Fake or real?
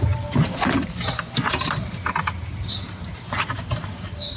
real